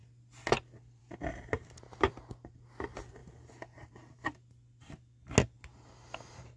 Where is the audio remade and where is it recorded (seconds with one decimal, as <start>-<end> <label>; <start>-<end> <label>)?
0.0-6.6 recorded